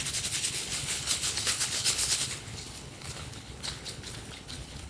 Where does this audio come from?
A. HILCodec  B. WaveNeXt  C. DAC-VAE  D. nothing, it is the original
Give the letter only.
A